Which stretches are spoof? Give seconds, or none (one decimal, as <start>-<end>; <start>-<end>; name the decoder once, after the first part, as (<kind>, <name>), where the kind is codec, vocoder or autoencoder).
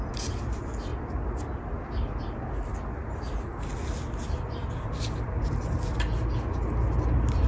none